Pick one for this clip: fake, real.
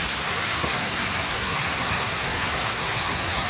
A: fake